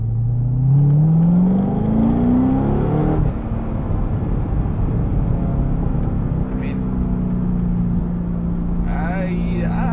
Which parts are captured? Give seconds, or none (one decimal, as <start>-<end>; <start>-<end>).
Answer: 0.0-9.9